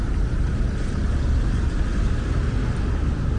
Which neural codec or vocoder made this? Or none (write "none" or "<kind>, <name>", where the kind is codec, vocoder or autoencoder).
none